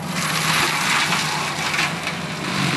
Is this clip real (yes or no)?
yes